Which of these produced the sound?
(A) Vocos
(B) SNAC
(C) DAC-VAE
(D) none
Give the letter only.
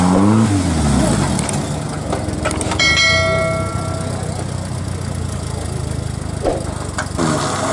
D